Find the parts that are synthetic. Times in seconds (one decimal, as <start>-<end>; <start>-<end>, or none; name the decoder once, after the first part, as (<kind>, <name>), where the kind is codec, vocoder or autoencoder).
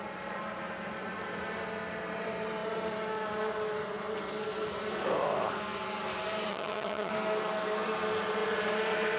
6.5-7.1 (vocoder, HiFi-GAN)